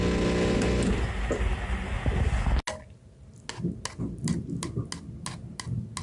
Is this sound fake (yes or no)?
no